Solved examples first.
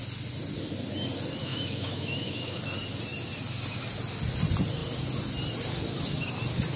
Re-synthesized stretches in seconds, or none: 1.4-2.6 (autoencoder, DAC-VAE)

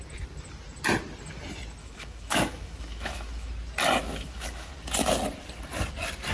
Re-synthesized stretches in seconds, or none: 1.8-3.5 (autoencoder, DAC-VAE); 4.0-4.7

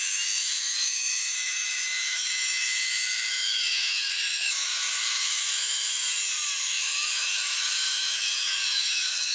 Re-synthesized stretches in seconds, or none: 0.0-6.0 (autoencoder, DAC-VAE); 6.6-9.3

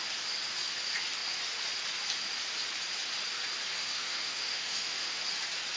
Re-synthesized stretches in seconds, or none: 3.8-5.2 (autoencoder, DAC-VAE)

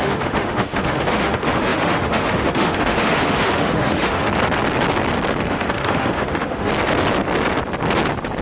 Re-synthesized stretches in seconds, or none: 0.0-4.3 (autoencoder, DAC-VAE); 5.5-6.7

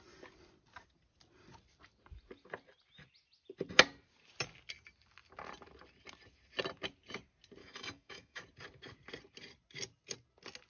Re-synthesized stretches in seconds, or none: 7.6-8.4 (autoencoder, DAC-VAE)